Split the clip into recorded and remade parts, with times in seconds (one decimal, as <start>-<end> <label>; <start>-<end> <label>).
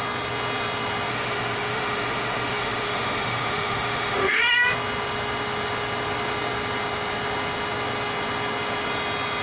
0.0-1.1 recorded; 1.1-4.4 remade; 4.4-9.4 recorded